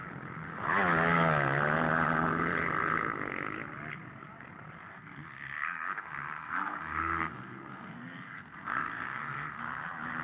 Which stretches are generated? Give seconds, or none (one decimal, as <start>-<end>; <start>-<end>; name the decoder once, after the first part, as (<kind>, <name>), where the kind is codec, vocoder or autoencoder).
4.9-9.6 (codec, SNAC)